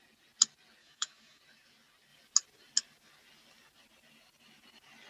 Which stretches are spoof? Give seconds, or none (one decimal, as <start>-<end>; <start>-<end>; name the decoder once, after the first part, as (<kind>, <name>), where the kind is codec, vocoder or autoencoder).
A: 0.8-1.4 (autoencoder, DAC-VAE)